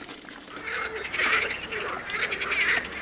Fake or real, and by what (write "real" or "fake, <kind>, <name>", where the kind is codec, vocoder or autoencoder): real